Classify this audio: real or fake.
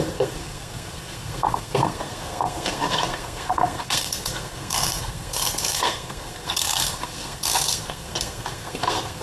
fake